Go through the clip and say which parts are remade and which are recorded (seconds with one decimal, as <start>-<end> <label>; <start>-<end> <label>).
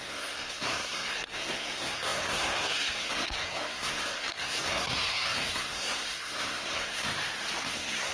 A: 0.0-7.1 remade; 7.1-7.6 recorded; 7.6-8.1 remade